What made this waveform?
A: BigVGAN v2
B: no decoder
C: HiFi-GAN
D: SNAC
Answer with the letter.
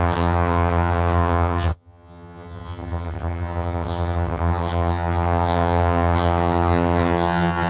C